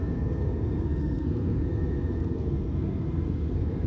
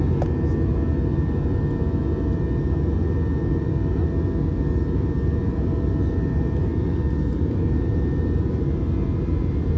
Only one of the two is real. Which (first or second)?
second